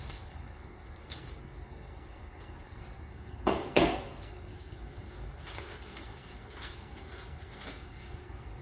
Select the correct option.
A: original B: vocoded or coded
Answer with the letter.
B